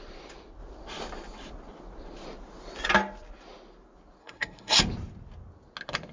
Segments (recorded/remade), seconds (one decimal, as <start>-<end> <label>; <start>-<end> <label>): 0.0-4.2 recorded; 4.2-4.8 remade; 4.8-6.1 recorded